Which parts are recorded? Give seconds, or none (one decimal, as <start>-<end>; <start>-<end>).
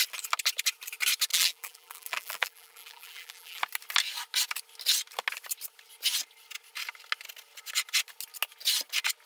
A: 0.0-1.3; 3.6-9.3